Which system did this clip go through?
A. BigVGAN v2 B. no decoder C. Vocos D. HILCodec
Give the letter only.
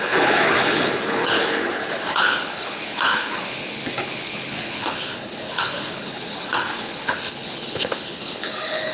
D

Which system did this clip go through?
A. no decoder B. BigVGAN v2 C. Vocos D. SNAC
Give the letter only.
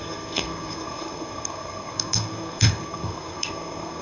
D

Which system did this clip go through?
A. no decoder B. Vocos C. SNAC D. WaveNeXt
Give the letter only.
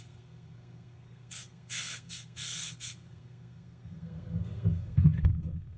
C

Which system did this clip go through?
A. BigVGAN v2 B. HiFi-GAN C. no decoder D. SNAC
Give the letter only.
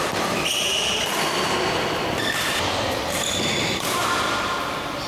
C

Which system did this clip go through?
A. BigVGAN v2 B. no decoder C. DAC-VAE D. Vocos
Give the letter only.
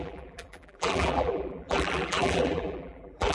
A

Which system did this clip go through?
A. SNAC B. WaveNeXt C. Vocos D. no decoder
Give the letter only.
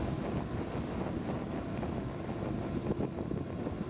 D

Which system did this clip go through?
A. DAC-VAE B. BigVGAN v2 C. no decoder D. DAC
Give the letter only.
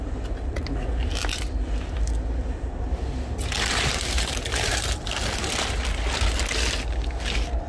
C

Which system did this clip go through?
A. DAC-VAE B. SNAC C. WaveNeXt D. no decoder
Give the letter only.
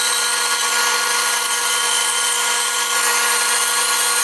D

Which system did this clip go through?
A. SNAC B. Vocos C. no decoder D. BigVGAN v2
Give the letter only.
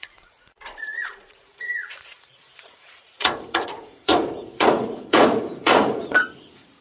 B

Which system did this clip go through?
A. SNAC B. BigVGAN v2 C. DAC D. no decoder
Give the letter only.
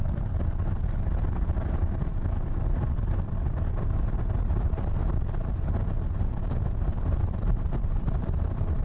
B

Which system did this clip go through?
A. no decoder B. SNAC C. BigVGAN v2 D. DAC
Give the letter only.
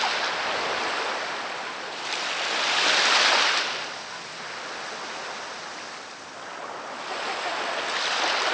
A